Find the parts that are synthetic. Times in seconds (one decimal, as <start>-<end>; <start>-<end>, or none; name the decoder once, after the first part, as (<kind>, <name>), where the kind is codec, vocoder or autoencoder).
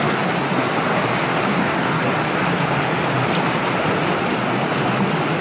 1.5-2.0 (codec, DAC)